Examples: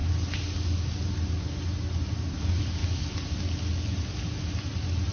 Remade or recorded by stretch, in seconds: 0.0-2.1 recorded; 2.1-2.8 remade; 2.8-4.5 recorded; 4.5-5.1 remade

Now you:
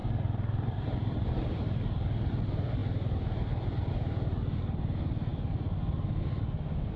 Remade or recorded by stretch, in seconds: 0.0-2.3 remade; 2.3-7.0 recorded